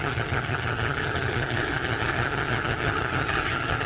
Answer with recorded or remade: remade